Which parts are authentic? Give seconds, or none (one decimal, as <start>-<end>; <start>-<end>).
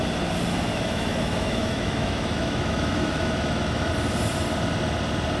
0.0-0.7; 3.9-5.4